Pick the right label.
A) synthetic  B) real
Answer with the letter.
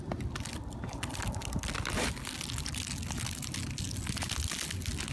B